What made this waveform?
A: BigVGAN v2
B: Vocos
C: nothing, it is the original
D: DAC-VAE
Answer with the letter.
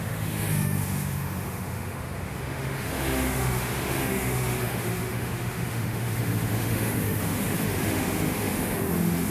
D